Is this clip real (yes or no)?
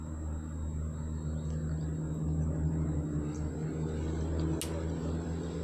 yes